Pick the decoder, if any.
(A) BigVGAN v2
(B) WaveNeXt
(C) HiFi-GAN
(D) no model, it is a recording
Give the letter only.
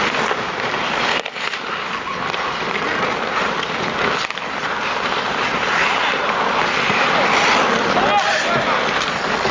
D